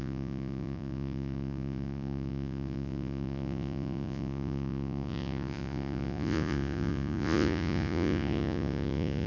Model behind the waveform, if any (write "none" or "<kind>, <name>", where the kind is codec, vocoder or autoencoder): vocoder, Vocos